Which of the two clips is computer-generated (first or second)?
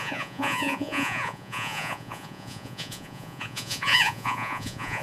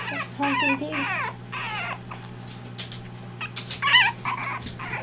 first